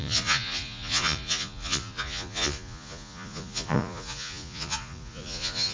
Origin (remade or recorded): remade